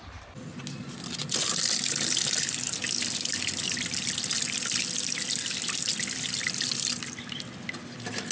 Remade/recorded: recorded